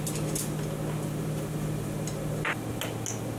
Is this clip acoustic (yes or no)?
yes